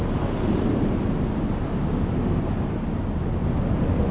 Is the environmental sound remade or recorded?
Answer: recorded